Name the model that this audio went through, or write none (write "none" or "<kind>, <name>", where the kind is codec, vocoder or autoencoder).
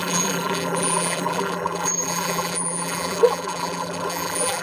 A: vocoder, BigVGAN v2